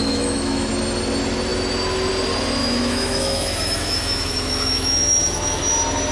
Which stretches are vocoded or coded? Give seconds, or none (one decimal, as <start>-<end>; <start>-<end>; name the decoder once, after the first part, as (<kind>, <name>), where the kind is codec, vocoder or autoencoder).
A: 0.0-0.7 (autoencoder, DAC-VAE); 2.6-5.6